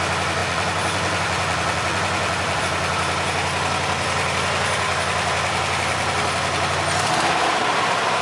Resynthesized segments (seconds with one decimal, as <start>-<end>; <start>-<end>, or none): 0.4-2.6